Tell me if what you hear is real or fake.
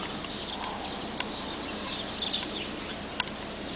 real